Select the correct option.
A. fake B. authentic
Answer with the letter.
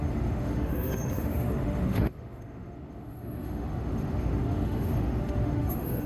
A